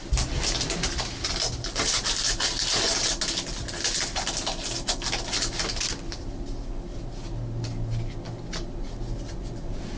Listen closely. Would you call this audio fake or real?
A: real